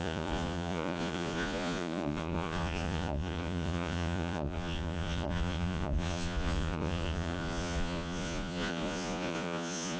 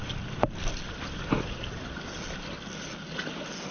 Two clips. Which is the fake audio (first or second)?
first